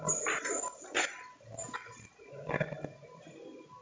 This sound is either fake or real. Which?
real